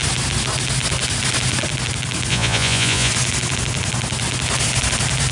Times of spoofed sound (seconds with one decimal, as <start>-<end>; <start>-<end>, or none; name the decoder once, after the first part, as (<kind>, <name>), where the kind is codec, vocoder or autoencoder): 2.3-3.1 (vocoder, Vocos)